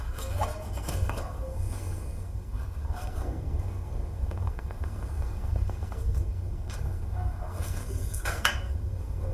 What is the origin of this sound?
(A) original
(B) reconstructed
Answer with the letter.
B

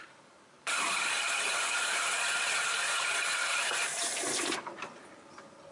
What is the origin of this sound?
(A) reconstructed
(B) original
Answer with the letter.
A